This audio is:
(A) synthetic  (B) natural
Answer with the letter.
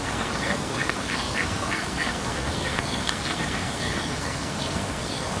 A